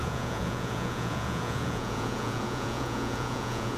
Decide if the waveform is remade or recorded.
remade